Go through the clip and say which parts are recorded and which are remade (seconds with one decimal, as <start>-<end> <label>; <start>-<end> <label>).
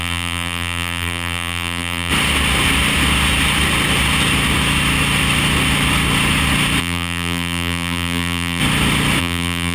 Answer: 0.0-2.1 remade; 2.1-6.8 recorded; 6.8-8.6 remade; 8.6-9.2 recorded; 9.2-9.7 remade